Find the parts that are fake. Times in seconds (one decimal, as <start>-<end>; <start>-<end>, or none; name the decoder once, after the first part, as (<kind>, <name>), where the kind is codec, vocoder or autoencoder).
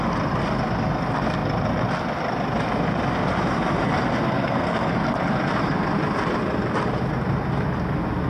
4.1-4.9 (codec, SNAC)